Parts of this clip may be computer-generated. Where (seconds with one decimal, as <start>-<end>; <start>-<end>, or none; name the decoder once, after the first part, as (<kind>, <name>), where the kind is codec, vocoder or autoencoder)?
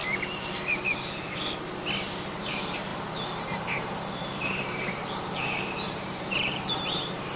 2.3-7.4 (vocoder, BigVGAN v2)